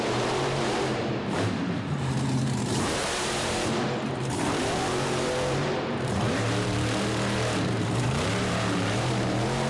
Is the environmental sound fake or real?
fake